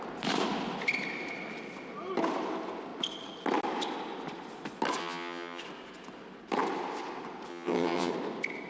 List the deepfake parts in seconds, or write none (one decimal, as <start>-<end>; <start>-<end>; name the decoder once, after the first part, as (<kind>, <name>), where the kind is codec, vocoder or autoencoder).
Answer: 5.0-5.6 (vocoder, HiFi-GAN); 7.5-8.1